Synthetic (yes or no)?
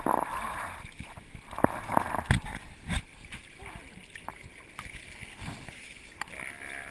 no